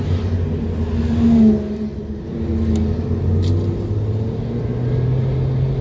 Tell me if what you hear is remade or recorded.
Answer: recorded